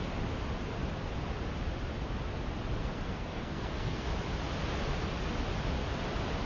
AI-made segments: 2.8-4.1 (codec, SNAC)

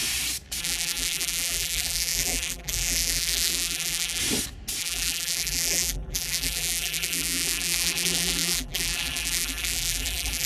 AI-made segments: 0.6-4.2 (vocoder, BigVGAN v2); 4.8-10.5